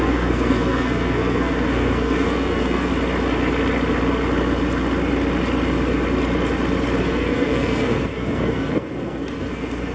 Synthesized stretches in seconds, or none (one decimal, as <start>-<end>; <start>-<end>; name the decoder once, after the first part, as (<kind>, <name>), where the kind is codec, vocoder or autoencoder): 0.0-2.9 (codec, SNAC); 7.0-9.9